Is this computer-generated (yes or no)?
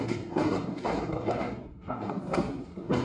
yes